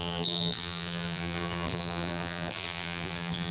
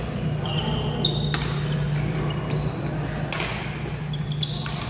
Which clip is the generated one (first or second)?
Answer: first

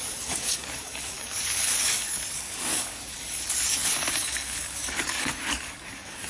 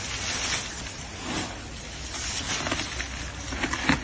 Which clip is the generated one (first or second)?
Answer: first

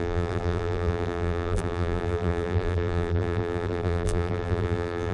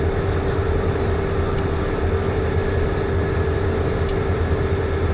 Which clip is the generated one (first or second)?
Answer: first